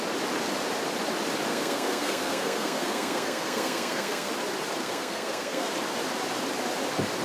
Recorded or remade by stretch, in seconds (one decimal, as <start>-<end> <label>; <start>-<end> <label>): 0.0-1.5 recorded; 1.5-4.3 remade; 4.3-4.8 recorded; 4.8-5.7 remade; 5.7-7.2 recorded